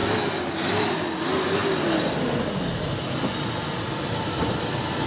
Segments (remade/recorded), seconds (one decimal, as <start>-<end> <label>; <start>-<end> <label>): 0.0-5.1 recorded